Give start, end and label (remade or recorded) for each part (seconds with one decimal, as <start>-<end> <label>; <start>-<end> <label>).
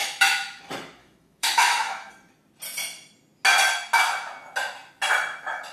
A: 0.0-0.6 remade; 0.6-1.0 recorded; 1.0-2.1 remade; 2.1-5.7 recorded